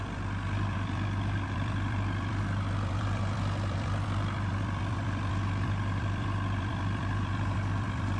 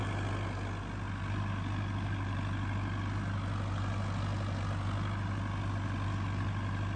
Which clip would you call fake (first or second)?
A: first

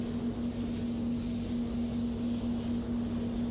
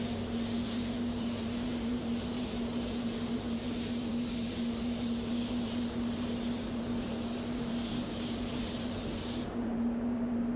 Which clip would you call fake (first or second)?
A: second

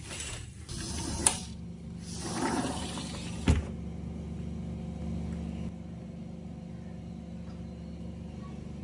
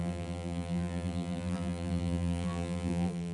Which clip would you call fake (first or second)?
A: second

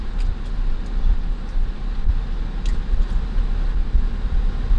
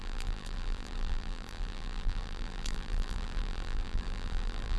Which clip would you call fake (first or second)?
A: second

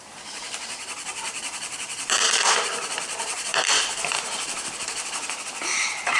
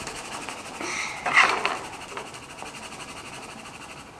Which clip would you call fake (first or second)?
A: first